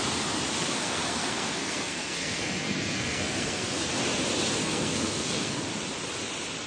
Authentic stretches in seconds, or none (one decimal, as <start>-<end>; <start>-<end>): 0.0-0.5; 3.9-4.6; 5.7-6.7